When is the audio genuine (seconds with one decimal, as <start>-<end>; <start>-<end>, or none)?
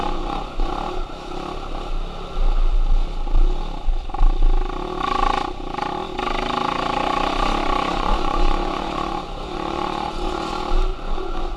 0.7-7.9; 10.5-10.9